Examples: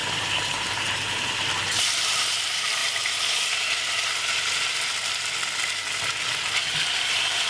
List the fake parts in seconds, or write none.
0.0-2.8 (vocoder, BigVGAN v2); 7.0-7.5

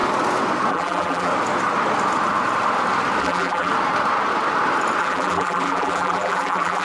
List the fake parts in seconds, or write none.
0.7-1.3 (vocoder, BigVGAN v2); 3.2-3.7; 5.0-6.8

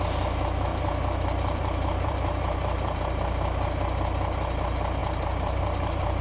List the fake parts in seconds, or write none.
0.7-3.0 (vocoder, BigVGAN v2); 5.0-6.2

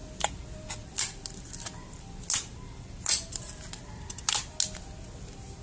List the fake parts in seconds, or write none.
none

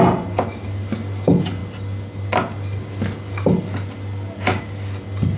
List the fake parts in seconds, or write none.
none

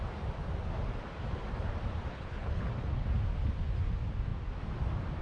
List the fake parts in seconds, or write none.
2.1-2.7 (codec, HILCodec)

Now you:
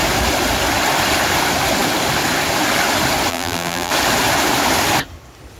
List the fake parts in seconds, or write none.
3.3-3.9 (vocoder, BigVGAN v2)

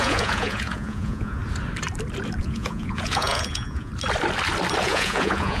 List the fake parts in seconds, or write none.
0.0-1.4 (vocoder, Vocos); 2.4-3.9; 4.8-5.6